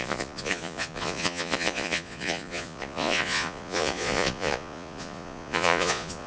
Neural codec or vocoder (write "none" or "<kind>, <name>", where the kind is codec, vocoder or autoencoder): vocoder, Vocos